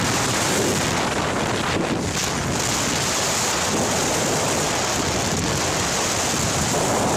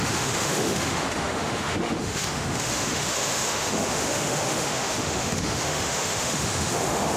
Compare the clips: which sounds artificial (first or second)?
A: second